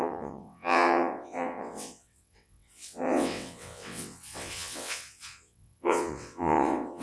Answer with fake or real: fake